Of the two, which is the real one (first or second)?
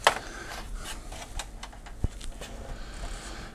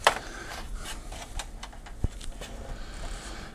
first